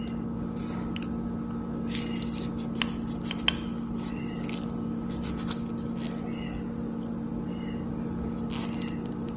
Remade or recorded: recorded